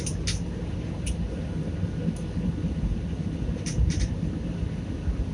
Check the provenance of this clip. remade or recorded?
recorded